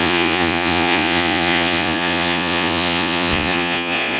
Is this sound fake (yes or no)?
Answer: yes